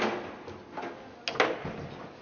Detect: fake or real real